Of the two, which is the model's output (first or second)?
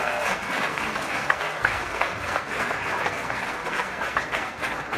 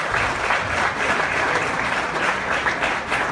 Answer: first